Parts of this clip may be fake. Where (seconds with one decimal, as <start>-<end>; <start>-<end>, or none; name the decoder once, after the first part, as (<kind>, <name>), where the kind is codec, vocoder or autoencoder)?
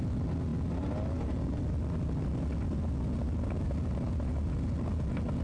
none